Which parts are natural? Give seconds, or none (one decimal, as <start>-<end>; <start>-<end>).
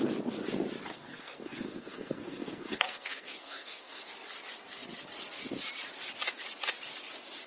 0.0-0.9; 4.1-7.5